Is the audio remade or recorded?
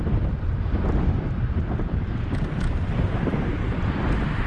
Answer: recorded